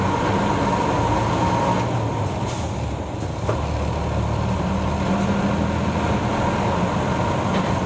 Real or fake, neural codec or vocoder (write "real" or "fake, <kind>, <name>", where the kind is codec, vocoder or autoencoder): real